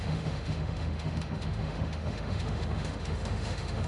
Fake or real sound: fake